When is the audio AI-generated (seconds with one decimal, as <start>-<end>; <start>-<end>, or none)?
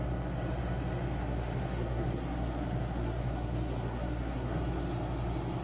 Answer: 1.2-4.6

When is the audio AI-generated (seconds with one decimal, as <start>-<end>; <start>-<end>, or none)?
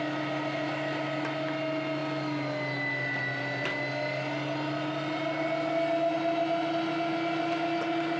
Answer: none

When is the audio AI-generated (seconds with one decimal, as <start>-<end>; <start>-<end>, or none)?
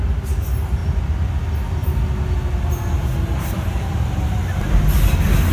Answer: none